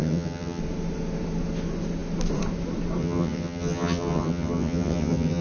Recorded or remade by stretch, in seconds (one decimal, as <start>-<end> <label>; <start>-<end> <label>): 0.0-0.6 remade; 0.6-3.0 recorded; 3.0-5.4 remade